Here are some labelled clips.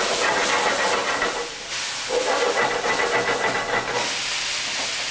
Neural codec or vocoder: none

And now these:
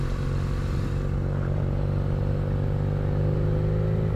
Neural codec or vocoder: none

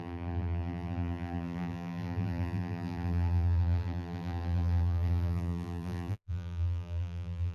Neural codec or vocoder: vocoder, BigVGAN v2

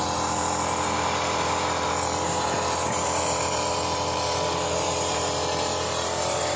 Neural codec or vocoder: vocoder, BigVGAN v2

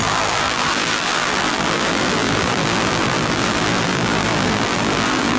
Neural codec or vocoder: vocoder, BigVGAN v2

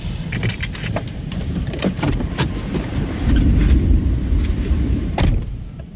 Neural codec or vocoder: vocoder, BigVGAN v2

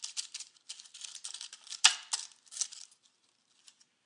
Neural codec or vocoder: none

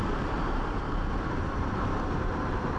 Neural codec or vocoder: vocoder, BigVGAN v2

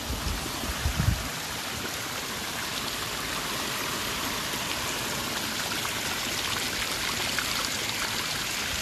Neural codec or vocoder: none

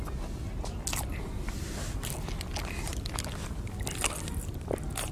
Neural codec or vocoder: none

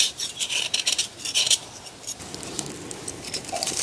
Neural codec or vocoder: vocoder, BigVGAN v2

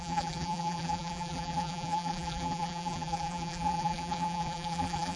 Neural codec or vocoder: vocoder, BigVGAN v2